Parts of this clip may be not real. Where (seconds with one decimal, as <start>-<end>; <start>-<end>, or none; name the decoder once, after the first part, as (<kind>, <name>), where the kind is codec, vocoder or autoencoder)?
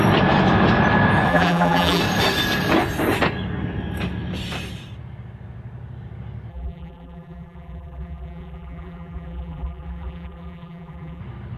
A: 1.3-2.0 (vocoder, BigVGAN v2); 6.5-11.2